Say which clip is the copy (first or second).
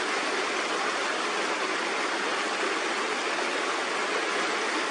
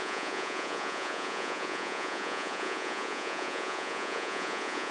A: second